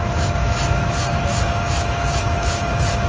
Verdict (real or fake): fake